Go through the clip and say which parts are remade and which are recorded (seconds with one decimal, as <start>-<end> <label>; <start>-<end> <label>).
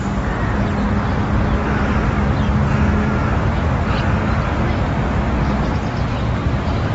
0.0-6.9 recorded